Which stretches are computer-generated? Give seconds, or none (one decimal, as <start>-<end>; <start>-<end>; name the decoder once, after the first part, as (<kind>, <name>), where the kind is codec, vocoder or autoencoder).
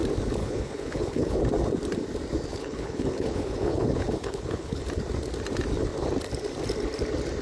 0.4-1.4 (codec, HILCodec); 2.5-4.8